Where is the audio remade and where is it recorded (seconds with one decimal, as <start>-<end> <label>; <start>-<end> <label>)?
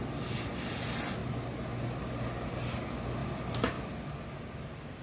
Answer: 0.0-5.0 recorded